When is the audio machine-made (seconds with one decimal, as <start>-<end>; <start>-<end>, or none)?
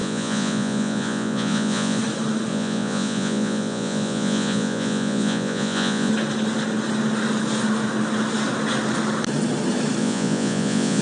0.0-2.0; 2.5-6.1; 10.0-11.0